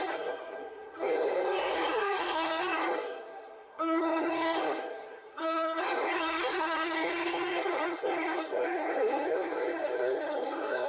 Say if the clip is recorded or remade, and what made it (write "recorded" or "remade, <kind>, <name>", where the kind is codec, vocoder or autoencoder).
remade, codec, SNAC